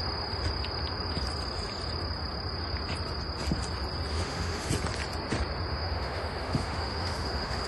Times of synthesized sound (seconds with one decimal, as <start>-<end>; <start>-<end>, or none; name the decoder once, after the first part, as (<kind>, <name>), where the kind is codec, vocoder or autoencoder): 4.1-4.7 (autoencoder, DAC-VAE); 5.7-7.7